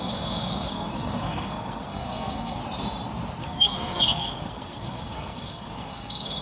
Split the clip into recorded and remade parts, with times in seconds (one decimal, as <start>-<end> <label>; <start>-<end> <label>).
0.0-2.6 remade; 2.6-3.4 recorded; 3.4-6.4 remade